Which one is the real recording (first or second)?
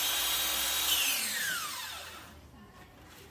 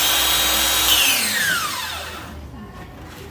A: second